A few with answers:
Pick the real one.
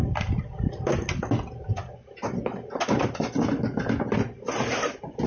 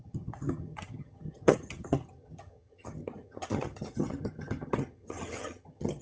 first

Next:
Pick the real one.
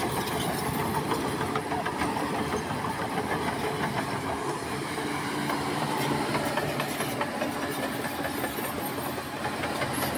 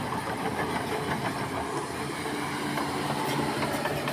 second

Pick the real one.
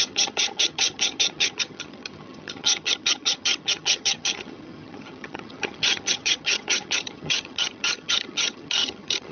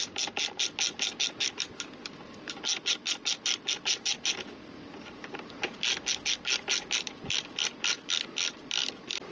second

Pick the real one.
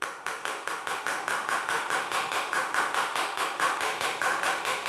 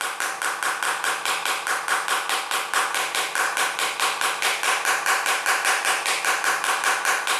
second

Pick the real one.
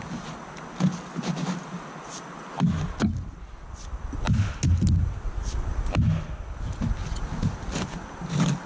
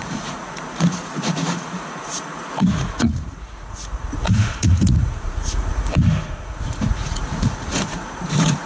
first